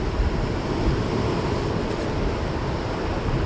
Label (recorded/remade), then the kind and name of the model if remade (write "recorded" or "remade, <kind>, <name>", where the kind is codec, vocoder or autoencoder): recorded